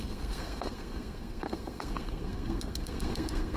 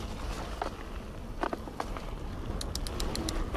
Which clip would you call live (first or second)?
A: second